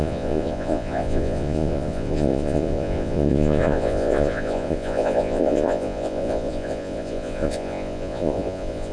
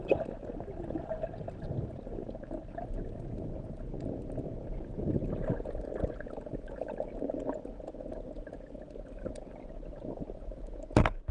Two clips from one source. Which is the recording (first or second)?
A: second